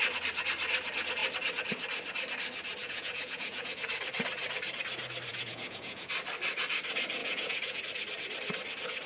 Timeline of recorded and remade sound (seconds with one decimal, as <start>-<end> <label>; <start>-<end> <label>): 0.0-2.8 recorded; 2.8-3.7 remade; 3.7-5.3 recorded; 5.3-6.1 remade; 6.1-7.2 recorded; 7.2-7.8 remade; 7.8-9.1 recorded

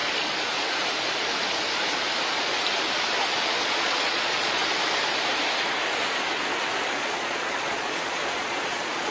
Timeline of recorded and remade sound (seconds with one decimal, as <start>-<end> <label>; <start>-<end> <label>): 0.0-3.6 recorded; 3.6-4.6 remade; 4.6-7.0 recorded; 7.0-9.1 remade

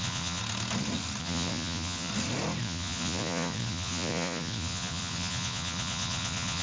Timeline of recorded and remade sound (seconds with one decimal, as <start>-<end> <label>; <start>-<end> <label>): 0.0-0.4 remade; 0.4-1.2 recorded; 1.2-2.1 remade; 2.1-2.6 recorded; 2.6-6.6 remade

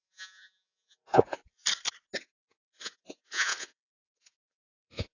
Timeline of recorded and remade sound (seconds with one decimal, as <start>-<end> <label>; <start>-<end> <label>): 0.0-1.6 remade; 1.6-2.2 recorded; 2.2-5.1 remade

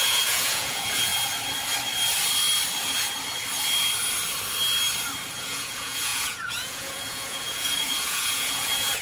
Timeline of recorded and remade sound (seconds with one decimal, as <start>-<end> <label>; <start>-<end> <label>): 0.0-1.1 remade; 1.1-5.4 recorded; 5.4-9.0 remade

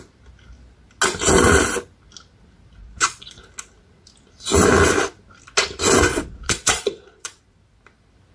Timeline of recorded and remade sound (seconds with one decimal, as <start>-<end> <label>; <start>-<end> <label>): 0.0-2.8 recorded; 2.8-3.4 remade; 3.4-6.1 recorded; 6.1-7.4 remade; 7.4-8.3 recorded

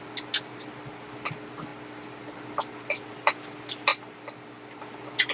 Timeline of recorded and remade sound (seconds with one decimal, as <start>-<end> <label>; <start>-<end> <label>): 0.0-5.3 recorded

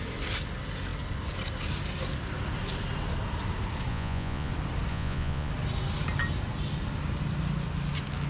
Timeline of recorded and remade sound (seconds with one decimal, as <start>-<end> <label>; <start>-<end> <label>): 0.0-3.9 recorded; 3.9-4.5 remade; 4.5-4.9 recorded; 4.9-5.5 remade; 5.5-8.3 recorded